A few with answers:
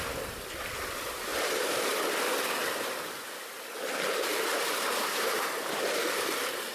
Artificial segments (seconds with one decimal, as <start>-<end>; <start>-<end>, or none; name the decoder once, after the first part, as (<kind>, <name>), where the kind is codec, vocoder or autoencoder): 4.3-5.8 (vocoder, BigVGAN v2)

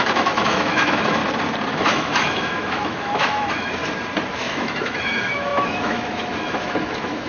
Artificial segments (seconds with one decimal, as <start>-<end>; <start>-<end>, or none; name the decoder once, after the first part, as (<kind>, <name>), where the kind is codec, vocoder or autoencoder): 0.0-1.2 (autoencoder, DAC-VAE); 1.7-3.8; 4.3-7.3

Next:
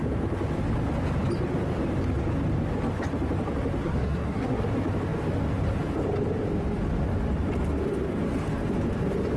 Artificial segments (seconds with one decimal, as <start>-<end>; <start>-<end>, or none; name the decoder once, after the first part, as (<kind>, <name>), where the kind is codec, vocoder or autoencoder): 3.8-4.6 (codec, SNAC)

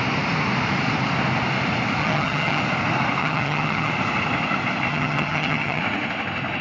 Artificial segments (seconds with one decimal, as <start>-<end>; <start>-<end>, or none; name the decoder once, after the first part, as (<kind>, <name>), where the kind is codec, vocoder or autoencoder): 2.0-2.6 (vocoder, HiFi-GAN); 3.2-3.9; 4.9-5.8

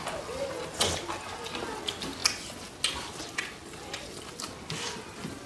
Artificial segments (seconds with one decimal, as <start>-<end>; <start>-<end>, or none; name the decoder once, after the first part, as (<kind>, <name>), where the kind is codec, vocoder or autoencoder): none

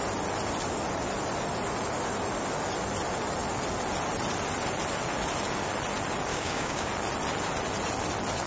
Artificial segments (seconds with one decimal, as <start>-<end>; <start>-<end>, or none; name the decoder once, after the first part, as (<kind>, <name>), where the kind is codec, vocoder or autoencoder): 6.3-6.9 (codec, DAC)